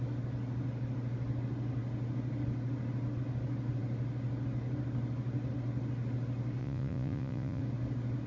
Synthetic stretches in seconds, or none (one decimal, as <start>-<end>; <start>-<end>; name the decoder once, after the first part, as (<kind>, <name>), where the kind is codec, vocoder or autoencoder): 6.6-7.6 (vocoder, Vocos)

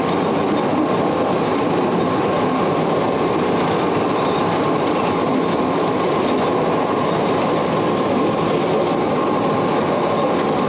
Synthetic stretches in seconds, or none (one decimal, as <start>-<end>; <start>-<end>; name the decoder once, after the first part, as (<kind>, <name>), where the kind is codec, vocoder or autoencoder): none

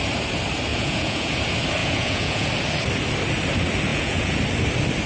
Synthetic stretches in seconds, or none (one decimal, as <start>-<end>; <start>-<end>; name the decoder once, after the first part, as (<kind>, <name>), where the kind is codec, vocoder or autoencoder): 0.7-1.4 (vocoder, Vocos); 1.8-2.5; 3.9-4.4